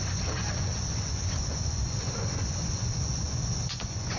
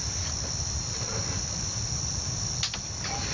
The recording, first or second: second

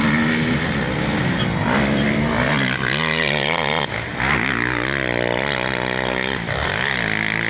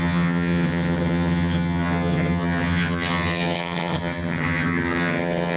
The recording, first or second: first